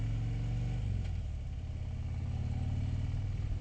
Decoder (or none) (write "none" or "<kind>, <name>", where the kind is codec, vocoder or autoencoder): none